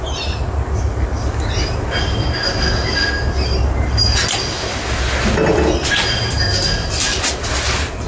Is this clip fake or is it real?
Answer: real